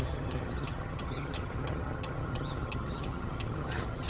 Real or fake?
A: fake